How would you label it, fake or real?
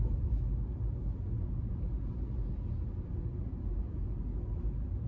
real